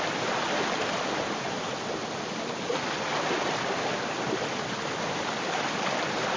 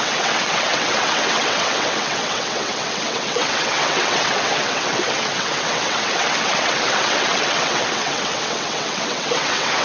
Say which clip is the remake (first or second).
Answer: second